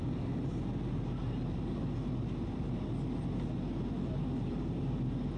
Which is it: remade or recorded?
recorded